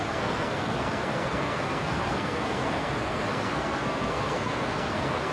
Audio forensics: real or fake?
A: fake